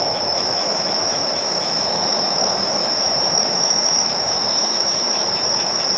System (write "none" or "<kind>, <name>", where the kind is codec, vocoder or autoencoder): autoencoder, DAC-VAE